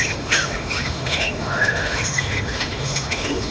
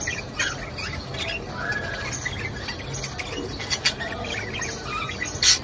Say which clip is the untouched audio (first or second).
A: second